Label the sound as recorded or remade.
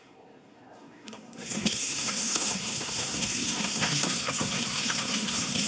remade